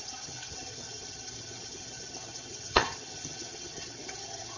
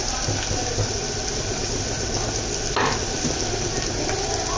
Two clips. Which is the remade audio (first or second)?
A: first